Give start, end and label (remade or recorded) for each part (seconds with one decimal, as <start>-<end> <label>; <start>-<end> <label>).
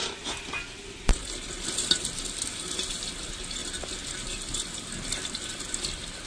0.0-6.3 recorded